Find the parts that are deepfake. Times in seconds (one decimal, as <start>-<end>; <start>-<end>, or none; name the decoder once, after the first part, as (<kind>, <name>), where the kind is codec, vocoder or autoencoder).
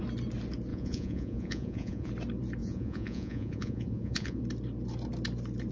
0.7-2.1 (vocoder, Vocos); 2.6-4.4